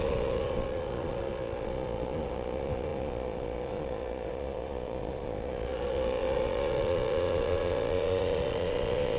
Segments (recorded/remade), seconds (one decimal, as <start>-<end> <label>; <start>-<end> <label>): 0.0-9.2 remade